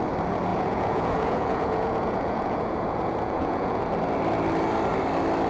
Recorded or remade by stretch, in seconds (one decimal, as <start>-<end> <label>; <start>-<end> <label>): 0.0-0.5 recorded; 0.5-3.8 remade; 3.8-5.5 recorded